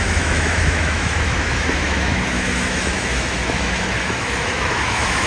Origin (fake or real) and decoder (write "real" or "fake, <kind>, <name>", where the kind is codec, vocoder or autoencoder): fake, autoencoder, DAC-VAE